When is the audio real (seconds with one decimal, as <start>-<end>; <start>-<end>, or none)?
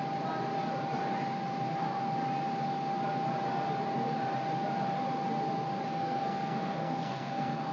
0.0-5.9